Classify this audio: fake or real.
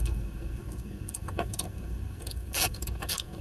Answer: fake